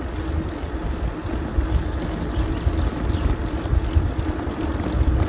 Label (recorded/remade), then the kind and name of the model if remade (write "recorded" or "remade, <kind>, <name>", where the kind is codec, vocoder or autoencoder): recorded